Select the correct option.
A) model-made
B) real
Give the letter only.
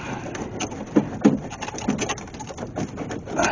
B